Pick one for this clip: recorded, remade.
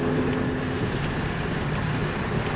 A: recorded